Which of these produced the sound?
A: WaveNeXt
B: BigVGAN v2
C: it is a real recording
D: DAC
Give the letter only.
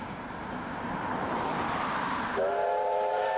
B